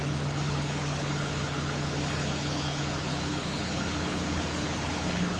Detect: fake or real fake